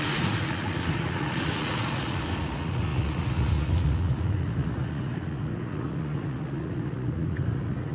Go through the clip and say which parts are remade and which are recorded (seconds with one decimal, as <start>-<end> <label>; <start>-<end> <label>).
0.0-7.9 remade